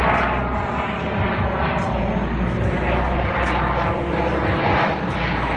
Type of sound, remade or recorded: recorded